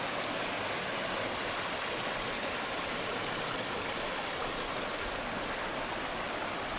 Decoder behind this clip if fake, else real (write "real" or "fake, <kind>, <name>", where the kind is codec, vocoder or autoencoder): real